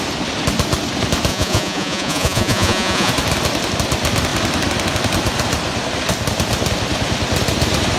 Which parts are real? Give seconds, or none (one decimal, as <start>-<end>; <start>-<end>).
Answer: 0.0-1.3; 3.1-8.0